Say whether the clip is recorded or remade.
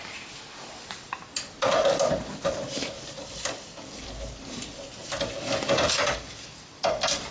recorded